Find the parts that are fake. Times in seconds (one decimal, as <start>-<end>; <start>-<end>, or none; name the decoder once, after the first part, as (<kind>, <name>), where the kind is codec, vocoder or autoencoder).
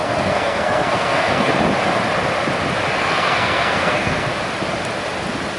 0.0-1.5 (codec, SNAC); 3.0-4.3